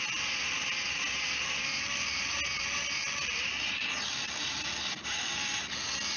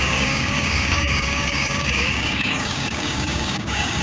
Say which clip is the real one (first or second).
first